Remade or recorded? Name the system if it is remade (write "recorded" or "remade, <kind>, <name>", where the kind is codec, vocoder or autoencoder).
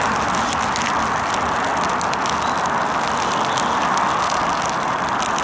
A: recorded